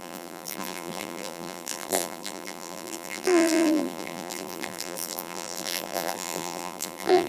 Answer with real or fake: fake